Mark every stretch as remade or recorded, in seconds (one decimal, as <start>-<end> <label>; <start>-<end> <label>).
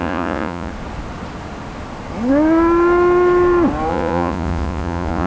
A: 0.0-0.7 remade; 0.7-3.9 recorded; 3.9-5.3 remade